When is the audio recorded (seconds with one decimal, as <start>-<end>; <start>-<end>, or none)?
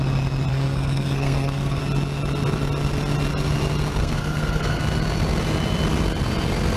0.0-0.5; 1.8-4.0; 4.8-6.8